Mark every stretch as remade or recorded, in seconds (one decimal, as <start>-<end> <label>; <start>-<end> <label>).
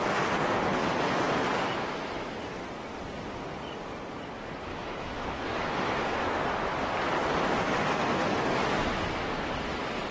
0.0-4.7 recorded; 4.7-6.4 remade; 6.4-10.1 recorded